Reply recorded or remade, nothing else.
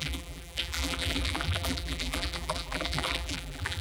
remade